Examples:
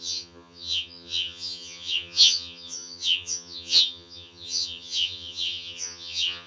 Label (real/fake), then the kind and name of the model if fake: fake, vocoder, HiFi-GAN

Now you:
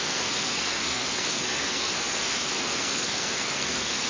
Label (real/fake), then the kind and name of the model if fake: fake, codec, SNAC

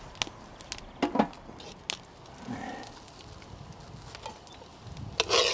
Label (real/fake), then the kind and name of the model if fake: real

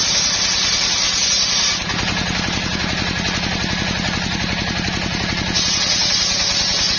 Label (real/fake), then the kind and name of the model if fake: real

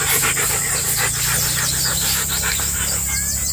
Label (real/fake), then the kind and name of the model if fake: real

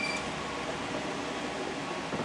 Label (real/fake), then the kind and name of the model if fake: real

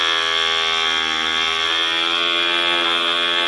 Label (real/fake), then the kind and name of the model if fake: real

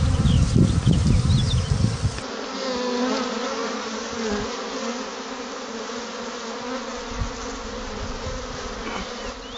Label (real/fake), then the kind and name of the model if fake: real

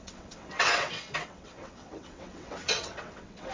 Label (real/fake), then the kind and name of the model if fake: fake, vocoder, WaveNeXt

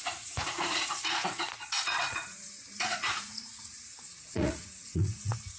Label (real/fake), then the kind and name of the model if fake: fake, vocoder, Vocos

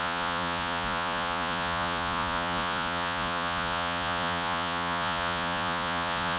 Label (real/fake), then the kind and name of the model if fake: fake, vocoder, Vocos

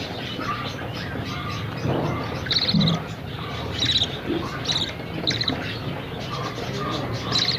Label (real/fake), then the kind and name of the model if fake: real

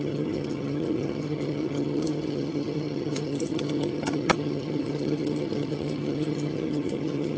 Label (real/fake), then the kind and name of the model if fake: fake, vocoder, HiFi-GAN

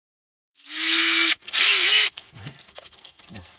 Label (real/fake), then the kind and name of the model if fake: fake, codec, SNAC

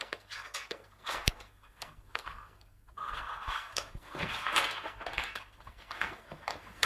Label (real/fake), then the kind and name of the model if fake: fake, codec, SNAC